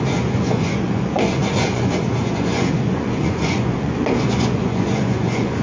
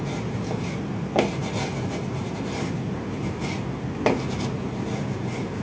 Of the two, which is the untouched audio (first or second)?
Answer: second